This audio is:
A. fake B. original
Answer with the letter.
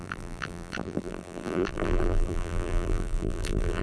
A